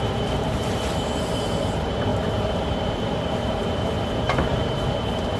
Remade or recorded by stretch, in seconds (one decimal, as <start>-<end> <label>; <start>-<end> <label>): 0.0-5.4 remade